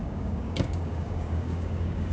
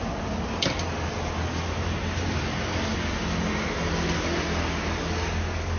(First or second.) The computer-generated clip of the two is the first